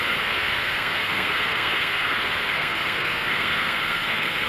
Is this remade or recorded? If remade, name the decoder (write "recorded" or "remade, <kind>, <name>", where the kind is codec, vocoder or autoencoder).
remade, codec, SNAC